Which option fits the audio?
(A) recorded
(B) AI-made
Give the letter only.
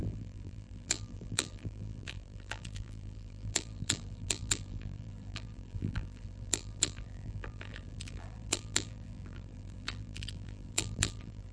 B